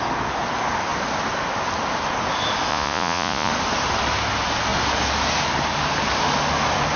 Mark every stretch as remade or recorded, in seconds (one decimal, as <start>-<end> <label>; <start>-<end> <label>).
0.0-2.7 recorded; 2.7-3.5 remade; 3.5-7.0 recorded